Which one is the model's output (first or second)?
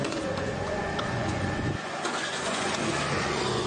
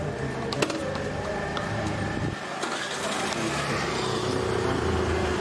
first